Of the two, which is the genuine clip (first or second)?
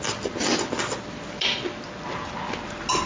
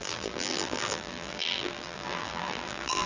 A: first